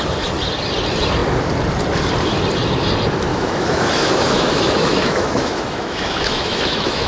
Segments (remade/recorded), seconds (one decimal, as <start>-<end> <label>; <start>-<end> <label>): 0.0-3.3 recorded; 3.3-7.1 remade